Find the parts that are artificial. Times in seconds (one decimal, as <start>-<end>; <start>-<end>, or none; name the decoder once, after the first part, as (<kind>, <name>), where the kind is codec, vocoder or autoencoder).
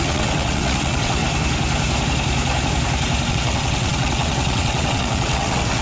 0.0-1.2 (vocoder, WaveNeXt); 3.3-5.8